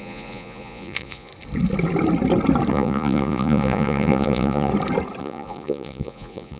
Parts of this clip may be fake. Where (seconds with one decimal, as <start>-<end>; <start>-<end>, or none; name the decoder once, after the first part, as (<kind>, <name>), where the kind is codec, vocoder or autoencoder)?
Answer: 0.0-1.3 (vocoder, Vocos); 2.7-4.7; 5.2-6.6